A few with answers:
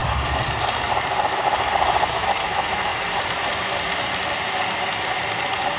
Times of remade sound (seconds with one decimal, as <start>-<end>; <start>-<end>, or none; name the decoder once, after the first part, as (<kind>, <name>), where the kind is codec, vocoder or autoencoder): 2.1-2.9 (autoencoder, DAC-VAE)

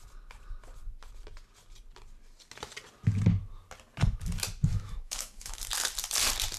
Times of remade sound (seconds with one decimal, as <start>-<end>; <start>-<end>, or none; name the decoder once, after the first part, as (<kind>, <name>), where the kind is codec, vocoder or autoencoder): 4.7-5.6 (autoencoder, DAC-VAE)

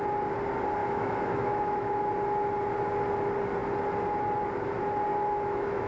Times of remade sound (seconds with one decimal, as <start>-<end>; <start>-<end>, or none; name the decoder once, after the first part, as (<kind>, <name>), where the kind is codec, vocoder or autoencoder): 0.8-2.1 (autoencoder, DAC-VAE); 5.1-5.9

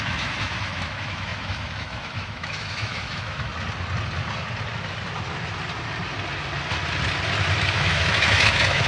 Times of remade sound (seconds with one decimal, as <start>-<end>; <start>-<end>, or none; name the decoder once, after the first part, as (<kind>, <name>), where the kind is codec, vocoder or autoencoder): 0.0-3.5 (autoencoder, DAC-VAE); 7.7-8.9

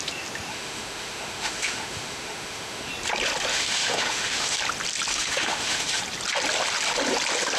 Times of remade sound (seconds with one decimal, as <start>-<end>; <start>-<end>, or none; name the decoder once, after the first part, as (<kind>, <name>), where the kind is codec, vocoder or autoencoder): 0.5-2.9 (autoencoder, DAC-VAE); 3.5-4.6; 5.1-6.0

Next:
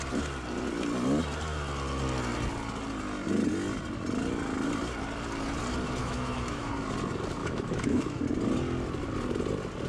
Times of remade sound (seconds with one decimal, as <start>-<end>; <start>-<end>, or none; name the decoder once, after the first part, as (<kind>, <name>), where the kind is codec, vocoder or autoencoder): 6.0-6.7 (autoencoder, DAC-VAE); 7.4-8.2

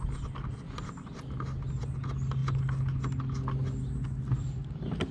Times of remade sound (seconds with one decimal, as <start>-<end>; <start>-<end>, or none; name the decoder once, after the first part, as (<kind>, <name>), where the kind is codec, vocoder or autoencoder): none